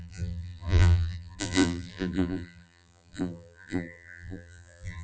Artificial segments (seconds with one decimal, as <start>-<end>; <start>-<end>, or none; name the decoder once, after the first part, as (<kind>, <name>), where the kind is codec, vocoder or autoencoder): 0.0-5.0 (vocoder, BigVGAN v2)